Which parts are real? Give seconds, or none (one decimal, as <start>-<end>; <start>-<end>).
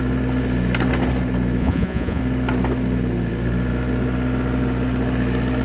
0.0-1.6; 2.2-5.6